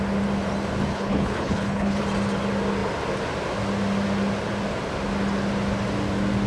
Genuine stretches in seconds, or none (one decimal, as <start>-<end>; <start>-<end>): 0.0-0.9; 2.0-6.5